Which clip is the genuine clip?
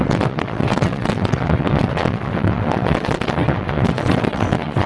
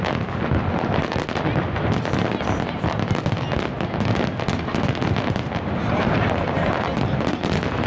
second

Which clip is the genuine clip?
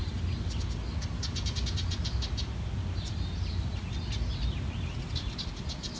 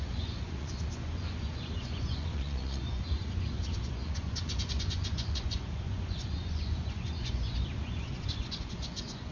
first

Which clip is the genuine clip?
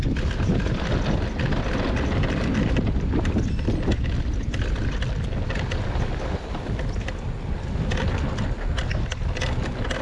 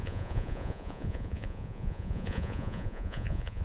first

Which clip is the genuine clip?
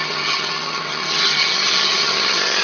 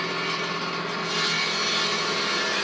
second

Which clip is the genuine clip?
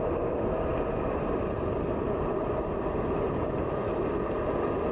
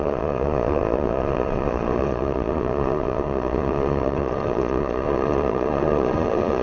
first